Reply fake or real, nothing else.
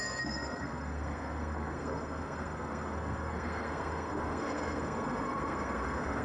fake